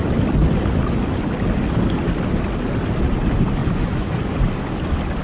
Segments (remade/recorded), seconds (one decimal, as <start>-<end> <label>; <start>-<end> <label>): 0.0-3.6 recorded; 3.6-4.4 remade; 4.4-5.2 recorded